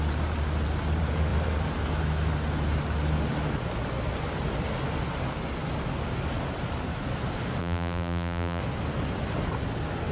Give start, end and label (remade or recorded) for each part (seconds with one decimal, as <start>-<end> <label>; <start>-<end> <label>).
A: 0.0-7.6 recorded; 7.6-8.6 remade; 8.6-10.1 recorded

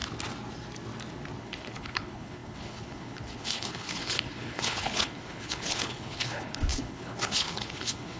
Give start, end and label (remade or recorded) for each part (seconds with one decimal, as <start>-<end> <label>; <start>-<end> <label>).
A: 0.0-1.4 recorded; 1.4-8.2 remade

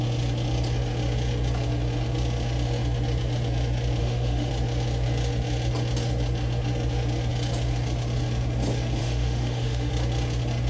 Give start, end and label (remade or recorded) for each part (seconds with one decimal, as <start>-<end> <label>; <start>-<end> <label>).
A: 0.0-4.0 recorded; 4.0-4.5 remade; 4.5-9.0 recorded; 9.0-9.9 remade; 9.9-10.7 recorded